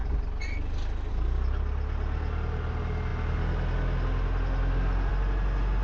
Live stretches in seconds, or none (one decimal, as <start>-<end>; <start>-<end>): 0.0-5.8